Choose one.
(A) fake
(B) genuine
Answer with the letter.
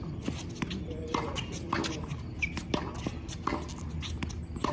B